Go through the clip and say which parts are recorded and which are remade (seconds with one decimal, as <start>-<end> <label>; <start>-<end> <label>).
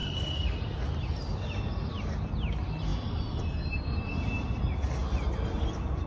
0.0-6.1 recorded